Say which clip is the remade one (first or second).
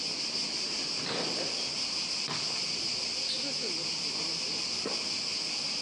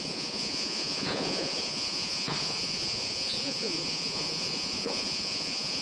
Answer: second